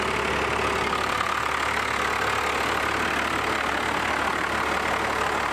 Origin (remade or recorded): recorded